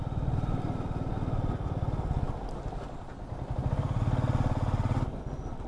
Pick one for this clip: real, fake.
real